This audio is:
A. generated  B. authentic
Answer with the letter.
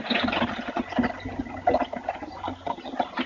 B